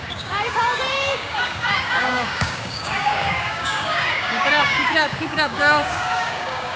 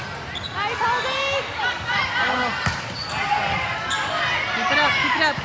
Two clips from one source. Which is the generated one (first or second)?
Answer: first